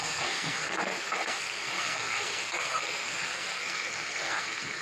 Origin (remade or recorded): remade